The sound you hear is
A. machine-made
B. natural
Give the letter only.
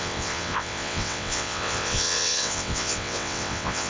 A